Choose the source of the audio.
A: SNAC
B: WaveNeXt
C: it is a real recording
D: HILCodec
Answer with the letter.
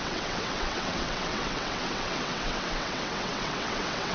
B